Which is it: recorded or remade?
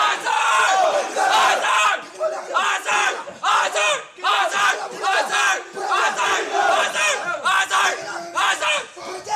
recorded